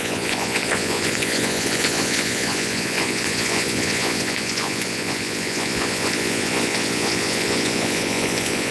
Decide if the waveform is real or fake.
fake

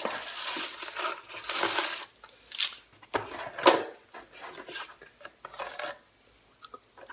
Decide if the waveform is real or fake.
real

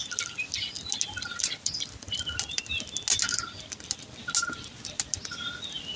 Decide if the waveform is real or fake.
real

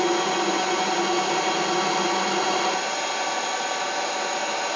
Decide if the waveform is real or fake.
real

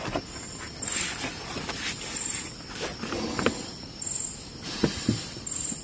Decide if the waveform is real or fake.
real